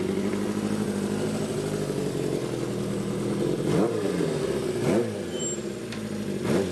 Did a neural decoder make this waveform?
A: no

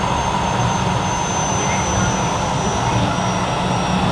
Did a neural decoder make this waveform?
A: no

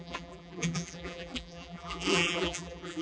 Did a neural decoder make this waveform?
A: yes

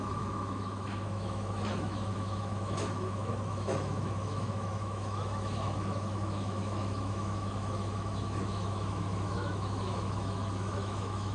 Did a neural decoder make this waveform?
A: yes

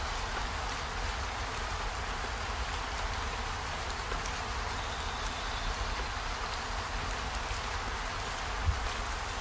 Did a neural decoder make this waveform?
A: no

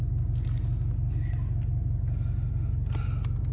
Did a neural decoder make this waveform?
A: no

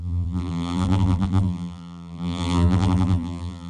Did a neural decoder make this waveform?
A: yes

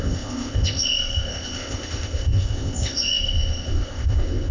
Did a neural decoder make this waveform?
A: yes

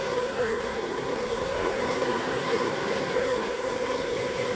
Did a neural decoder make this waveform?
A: yes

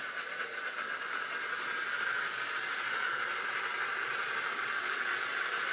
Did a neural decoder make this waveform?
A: yes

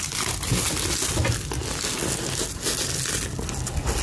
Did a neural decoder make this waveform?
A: no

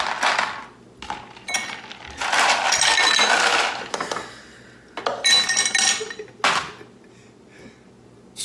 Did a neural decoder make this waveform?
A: no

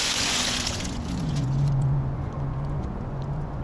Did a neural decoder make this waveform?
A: yes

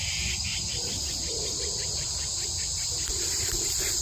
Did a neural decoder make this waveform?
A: no